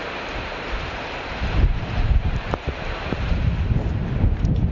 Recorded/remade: remade